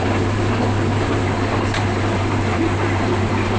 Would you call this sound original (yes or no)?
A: no